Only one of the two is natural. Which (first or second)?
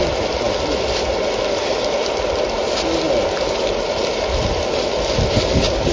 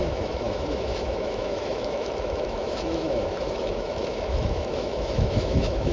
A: first